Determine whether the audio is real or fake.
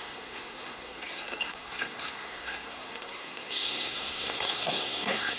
fake